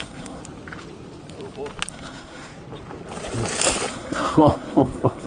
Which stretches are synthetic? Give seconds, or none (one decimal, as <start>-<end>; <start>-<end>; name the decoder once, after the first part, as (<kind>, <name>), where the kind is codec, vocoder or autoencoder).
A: 0.0-0.4 (codec, SNAC); 1.9-2.5; 3.9-5.3